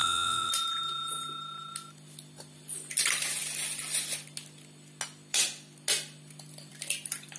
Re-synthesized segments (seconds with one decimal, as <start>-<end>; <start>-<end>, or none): 0.0-0.5